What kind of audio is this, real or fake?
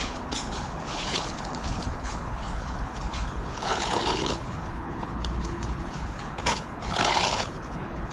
fake